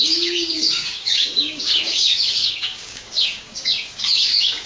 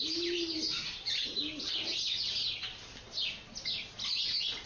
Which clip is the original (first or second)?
second